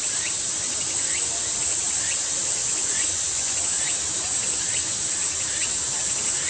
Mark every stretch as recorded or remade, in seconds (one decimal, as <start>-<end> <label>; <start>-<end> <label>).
0.0-2.6 recorded; 2.6-3.6 remade; 3.6-6.5 recorded